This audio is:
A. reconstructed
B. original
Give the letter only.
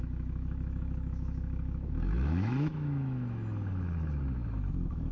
A